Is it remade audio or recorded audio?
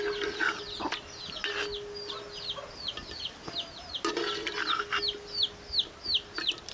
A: recorded